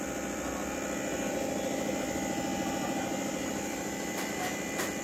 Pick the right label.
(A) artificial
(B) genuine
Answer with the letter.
A